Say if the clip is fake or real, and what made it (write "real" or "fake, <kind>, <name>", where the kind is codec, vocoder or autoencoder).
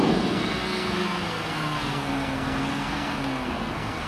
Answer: fake, codec, SNAC